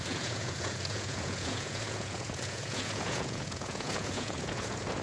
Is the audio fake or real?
fake